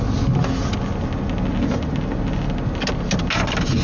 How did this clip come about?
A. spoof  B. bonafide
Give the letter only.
B